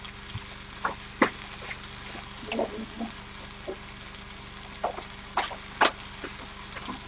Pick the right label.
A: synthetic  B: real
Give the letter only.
B